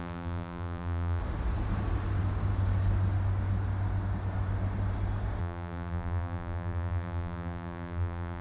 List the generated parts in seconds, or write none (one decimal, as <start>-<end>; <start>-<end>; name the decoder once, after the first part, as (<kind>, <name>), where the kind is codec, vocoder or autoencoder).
0.0-1.2 (vocoder, BigVGAN v2); 5.4-8.4